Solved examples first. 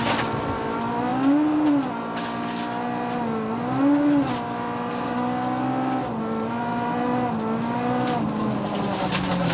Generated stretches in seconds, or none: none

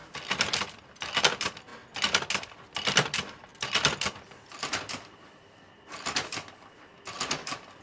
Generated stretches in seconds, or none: 1.2-1.7 (vocoder, BigVGAN v2); 2.4-7.8

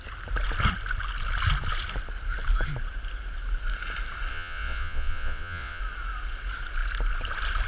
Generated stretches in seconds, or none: 4.3-5.8 (vocoder, Vocos)

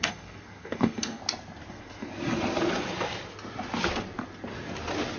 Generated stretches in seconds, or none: 0.0-1.2 (codec, SNAC); 1.7-2.1